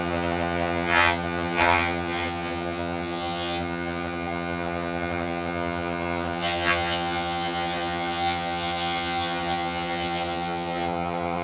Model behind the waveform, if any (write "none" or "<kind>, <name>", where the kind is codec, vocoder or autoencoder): vocoder, HiFi-GAN